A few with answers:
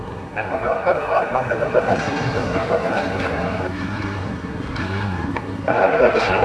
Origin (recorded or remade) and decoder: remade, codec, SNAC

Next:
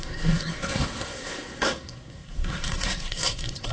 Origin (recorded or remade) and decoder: remade, codec, SNAC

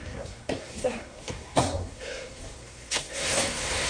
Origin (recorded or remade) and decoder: remade, codec, SNAC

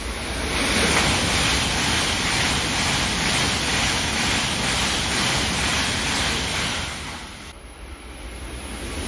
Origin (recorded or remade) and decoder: recorded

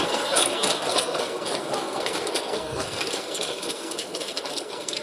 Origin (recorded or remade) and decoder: remade, codec, SNAC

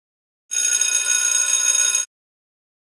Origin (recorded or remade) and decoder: recorded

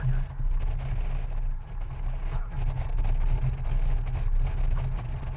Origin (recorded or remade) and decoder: recorded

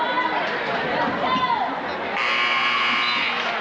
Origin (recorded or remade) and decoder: recorded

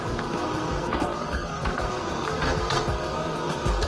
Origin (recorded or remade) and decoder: remade, codec, SNAC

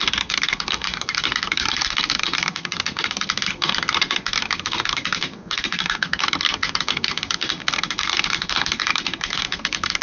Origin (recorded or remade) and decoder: remade, codec, SNAC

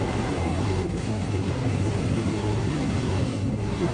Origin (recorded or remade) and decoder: remade, codec, SNAC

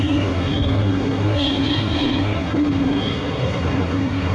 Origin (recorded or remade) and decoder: remade, codec, SNAC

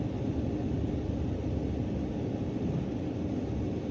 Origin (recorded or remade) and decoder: recorded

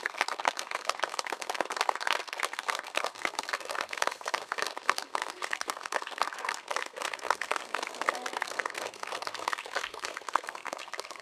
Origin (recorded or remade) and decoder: remade, codec, SNAC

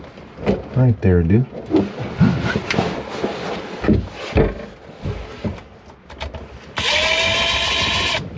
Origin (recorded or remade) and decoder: recorded